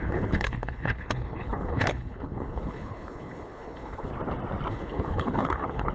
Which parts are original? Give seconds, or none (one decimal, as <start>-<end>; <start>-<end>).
4.1-4.7